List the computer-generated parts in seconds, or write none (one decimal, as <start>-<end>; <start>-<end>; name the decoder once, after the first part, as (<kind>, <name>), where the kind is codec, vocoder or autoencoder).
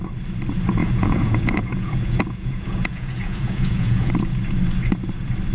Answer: 0.8-4.1 (vocoder, Vocos)